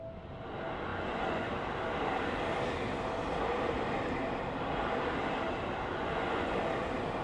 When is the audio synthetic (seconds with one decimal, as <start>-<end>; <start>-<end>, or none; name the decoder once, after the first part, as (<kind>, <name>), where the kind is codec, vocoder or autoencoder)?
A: 0.9-1.5 (vocoder, Vocos); 5.9-6.6